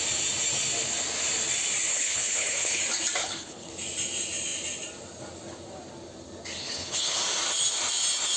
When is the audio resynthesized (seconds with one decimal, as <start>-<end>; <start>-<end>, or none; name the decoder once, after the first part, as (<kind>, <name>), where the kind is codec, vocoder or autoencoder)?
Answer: 1.9-2.8 (codec, HILCodec); 3.2-3.7; 6.6-7.2